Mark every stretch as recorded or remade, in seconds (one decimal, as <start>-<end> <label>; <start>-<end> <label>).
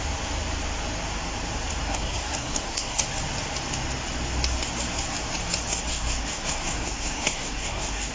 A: 0.0-1.8 recorded; 1.8-3.1 remade; 3.1-5.9 recorded; 5.9-8.1 remade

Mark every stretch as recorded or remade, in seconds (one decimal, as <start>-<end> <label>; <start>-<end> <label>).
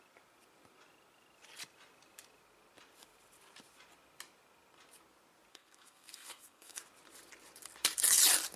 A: 0.0-5.5 recorded; 5.5-6.8 remade; 6.8-8.6 recorded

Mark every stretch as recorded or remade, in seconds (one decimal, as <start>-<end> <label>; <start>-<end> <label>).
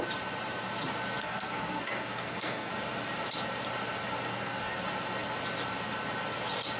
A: 0.0-1.2 recorded; 1.2-2.7 remade; 2.7-4.3 recorded; 4.3-4.8 remade; 4.8-6.8 recorded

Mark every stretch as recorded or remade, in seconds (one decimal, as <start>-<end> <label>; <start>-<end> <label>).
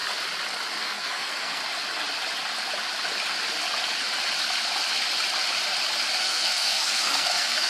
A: 0.0-0.8 recorded; 0.8-1.6 remade; 1.6-6.2 recorded; 6.2-7.7 remade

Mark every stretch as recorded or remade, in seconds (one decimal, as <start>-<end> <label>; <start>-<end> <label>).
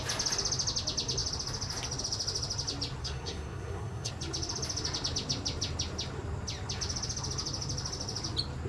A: 0.0-3.0 recorded; 3.0-4.1 remade; 4.1-8.7 recorded